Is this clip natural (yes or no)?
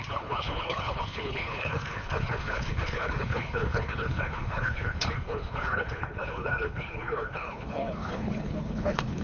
no